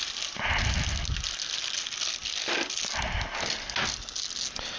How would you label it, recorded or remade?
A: recorded